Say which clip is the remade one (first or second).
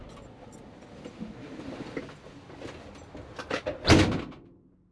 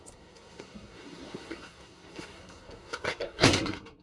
second